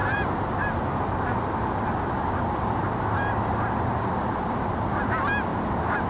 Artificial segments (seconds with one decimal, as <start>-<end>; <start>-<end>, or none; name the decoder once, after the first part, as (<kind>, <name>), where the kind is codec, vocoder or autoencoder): 0.0-3.5 (vocoder, BigVGAN v2); 5.5-6.1